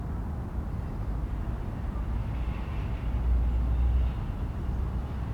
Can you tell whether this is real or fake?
real